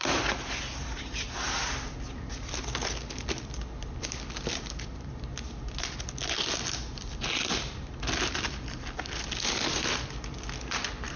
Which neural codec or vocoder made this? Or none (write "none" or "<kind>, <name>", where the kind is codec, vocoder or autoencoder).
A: none